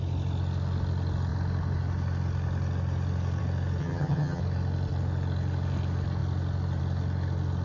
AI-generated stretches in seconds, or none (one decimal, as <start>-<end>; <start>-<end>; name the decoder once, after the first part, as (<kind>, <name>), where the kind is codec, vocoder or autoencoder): 3.8-4.4 (vocoder, HiFi-GAN)